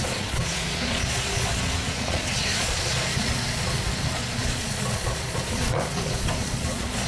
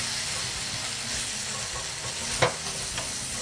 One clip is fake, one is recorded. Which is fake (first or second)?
first